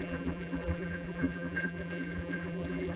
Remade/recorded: remade